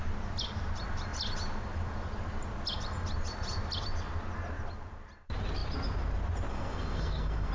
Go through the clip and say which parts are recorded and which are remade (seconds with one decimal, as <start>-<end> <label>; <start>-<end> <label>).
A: 0.0-6.5 recorded; 6.5-7.5 remade

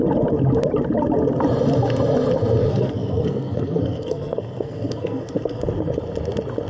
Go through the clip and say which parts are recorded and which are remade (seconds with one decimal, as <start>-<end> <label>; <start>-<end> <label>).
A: 0.0-2.6 recorded; 2.6-5.6 remade; 5.6-6.7 recorded

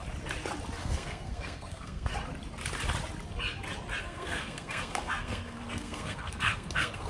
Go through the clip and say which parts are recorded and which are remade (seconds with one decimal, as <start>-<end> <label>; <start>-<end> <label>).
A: 0.0-0.8 recorded; 0.8-2.1 remade; 2.1-4.0 recorded; 4.0-7.1 remade

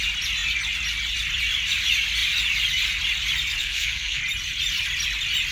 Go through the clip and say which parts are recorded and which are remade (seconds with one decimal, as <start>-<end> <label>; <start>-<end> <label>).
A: 0.0-3.6 recorded; 3.6-4.2 remade; 4.2-5.5 recorded

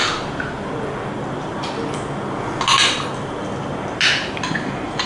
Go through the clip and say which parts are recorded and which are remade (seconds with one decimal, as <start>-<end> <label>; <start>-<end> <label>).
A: 0.0-5.1 recorded